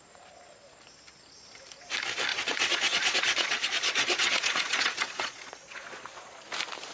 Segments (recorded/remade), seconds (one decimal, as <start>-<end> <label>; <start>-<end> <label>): 0.0-2.3 recorded; 2.3-6.4 remade; 6.4-6.9 recorded